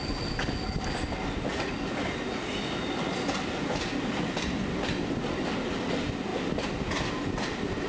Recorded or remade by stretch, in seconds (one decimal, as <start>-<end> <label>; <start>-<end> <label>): 0.0-7.9 recorded